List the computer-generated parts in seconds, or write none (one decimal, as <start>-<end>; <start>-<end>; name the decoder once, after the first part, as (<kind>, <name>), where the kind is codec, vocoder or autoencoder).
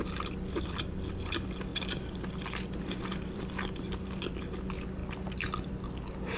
1.7-4.4 (vocoder, BigVGAN v2)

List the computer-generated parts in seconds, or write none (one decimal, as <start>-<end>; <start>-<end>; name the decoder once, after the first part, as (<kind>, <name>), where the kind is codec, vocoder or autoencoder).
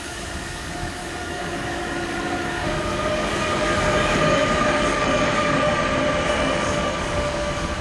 0.0-5.8 (codec, DAC); 6.3-7.8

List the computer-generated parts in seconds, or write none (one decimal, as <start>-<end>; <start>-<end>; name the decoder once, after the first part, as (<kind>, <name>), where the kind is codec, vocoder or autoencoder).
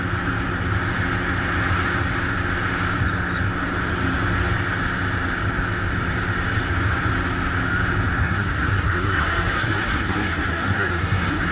8.2-11.5 (codec, SNAC)